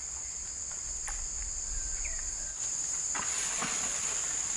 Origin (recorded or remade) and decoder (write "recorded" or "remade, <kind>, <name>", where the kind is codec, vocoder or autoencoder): recorded